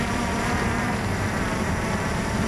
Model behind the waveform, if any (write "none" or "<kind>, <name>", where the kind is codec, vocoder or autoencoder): vocoder, BigVGAN v2